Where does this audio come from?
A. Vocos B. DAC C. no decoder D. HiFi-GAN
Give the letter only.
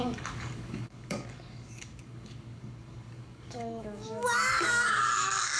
B